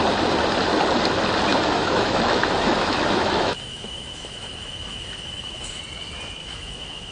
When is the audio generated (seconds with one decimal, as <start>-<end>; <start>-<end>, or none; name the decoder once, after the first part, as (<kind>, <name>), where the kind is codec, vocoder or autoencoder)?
1.5-5.8 (autoencoder, DAC-VAE); 6.4-7.1